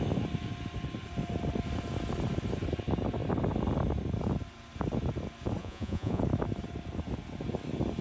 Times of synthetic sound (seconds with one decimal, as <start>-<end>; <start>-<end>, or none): 5.6-6.2